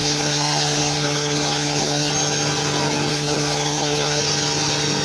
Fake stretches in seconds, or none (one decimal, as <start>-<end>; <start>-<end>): 0.0-2.1; 3.1-4.2